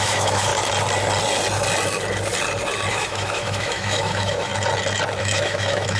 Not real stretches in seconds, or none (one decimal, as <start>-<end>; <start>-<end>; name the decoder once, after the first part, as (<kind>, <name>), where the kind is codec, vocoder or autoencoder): 0.0-0.5 (autoencoder, DAC-VAE); 2.9-4.5; 5.2-6.0